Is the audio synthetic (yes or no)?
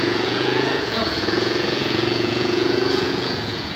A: yes